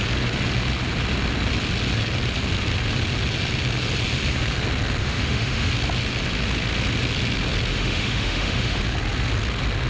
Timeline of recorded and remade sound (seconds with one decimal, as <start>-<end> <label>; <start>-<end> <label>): 0.0-5.0 recorded; 5.0-5.7 remade; 5.7-7.7 recorded; 7.7-8.8 remade; 8.8-9.9 recorded